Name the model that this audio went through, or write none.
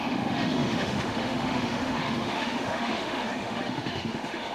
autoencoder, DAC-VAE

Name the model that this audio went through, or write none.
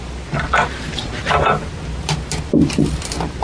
none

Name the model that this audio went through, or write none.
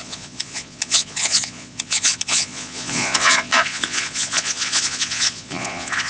vocoder, Vocos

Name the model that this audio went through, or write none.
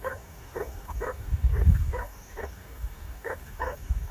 codec, DAC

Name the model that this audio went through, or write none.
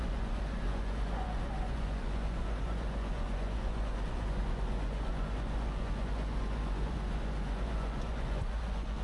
vocoder, Vocos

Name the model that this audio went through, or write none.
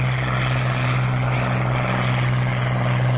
none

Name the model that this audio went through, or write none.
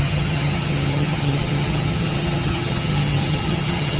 vocoder, HiFi-GAN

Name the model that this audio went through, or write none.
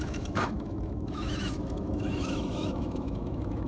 autoencoder, DAC-VAE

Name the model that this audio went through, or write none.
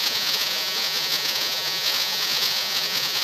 vocoder, Vocos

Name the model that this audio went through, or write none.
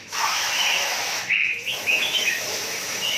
autoencoder, DAC-VAE